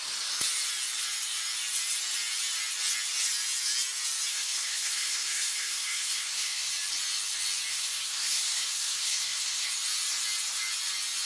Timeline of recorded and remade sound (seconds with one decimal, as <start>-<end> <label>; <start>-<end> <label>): 0.0-4.3 recorded; 4.3-6.7 remade; 6.7-7.7 recorded; 7.7-9.7 remade; 9.7-11.3 recorded